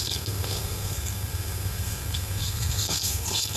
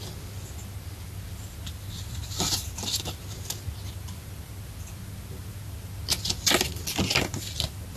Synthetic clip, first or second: first